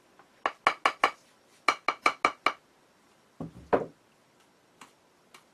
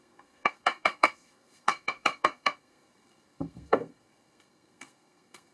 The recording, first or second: first